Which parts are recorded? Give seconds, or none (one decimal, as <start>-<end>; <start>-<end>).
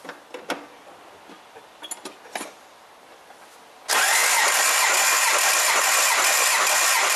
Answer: 0.0-7.2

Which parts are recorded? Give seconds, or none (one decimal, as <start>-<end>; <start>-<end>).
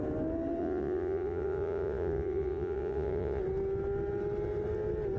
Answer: 0.0-0.6; 3.4-5.2